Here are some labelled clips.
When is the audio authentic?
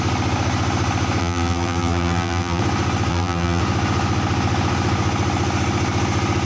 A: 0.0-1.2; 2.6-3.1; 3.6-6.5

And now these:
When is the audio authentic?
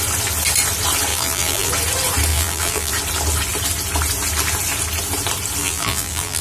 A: 0.0-1.1; 1.7-2.3; 2.9-5.6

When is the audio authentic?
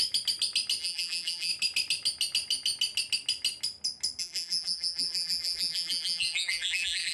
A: 0.0-0.8; 1.5-4.2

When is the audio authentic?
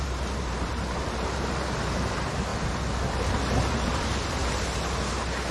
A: 4.4-5.5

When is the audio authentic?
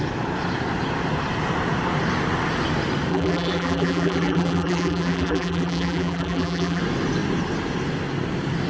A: 0.0-3.1; 6.8-8.7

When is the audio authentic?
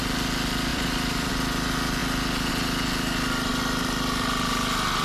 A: 0.0-0.7; 1.3-5.0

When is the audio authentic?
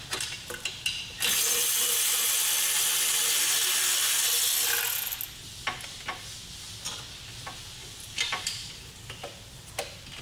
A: 0.0-7.8; 8.8-10.2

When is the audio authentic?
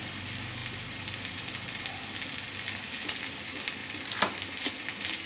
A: 0.0-0.6; 1.4-3.8; 4.7-5.3